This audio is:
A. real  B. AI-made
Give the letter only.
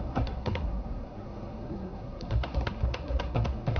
B